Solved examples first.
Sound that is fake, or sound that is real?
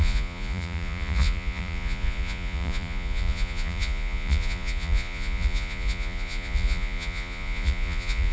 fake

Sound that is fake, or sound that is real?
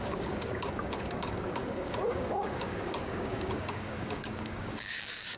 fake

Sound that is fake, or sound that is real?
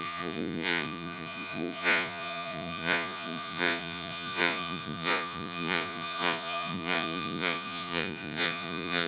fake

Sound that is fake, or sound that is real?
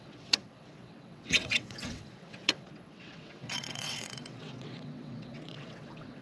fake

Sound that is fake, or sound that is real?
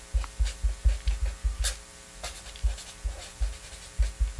real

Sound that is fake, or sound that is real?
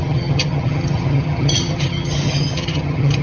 fake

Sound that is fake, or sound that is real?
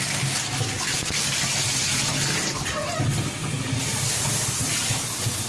real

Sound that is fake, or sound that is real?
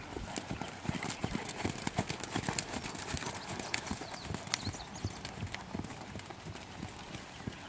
real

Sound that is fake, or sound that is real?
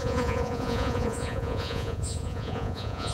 fake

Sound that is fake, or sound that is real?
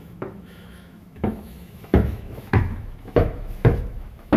fake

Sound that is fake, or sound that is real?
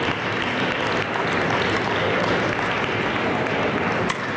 real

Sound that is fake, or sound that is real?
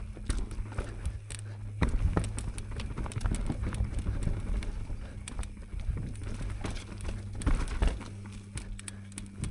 real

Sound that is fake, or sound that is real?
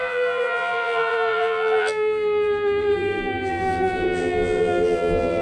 fake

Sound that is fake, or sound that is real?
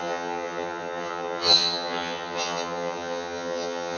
fake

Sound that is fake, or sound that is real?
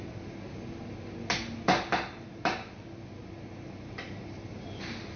real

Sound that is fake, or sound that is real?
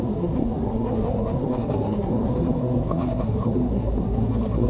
fake